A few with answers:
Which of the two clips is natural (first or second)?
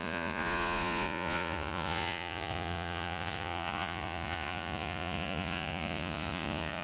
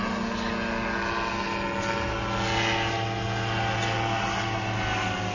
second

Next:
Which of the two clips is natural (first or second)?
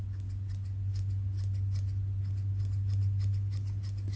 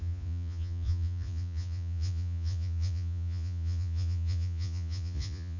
first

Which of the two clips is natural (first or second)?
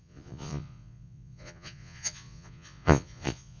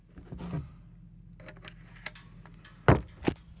second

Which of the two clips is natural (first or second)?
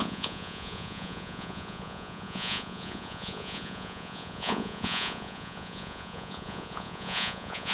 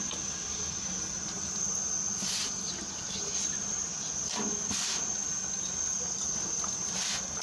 second